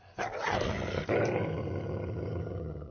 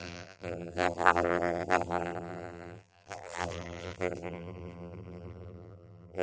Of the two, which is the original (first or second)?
first